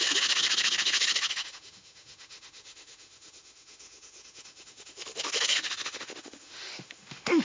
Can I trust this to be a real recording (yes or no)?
no